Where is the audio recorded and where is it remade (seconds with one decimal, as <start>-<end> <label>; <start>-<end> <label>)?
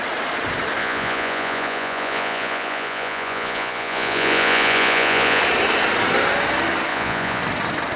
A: 0.0-0.8 recorded; 0.8-5.4 remade; 5.4-6.9 recorded; 6.9-7.4 remade; 7.4-8.0 recorded